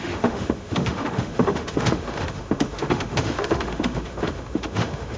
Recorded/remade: remade